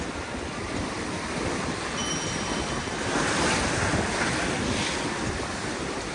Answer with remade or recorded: recorded